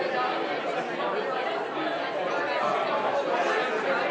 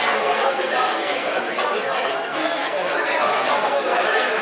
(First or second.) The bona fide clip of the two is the first